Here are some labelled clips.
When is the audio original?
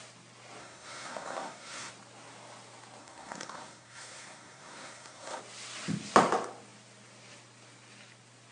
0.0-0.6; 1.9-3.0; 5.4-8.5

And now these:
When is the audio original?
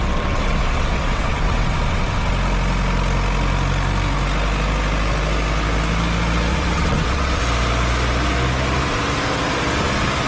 2.3-6.5; 7.4-10.3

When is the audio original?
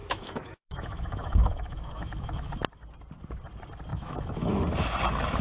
2.5-3.9; 4.5-5.4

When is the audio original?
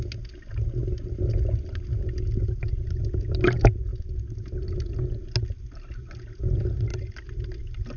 0.0-8.0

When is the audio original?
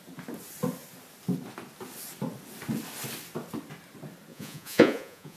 0.0-4.3